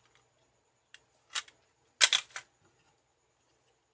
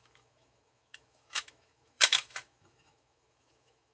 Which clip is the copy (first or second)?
second